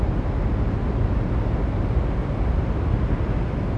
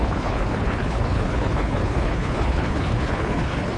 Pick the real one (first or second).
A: first